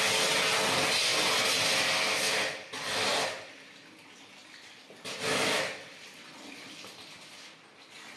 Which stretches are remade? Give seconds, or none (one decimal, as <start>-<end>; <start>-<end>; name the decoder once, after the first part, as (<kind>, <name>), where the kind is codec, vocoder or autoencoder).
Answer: none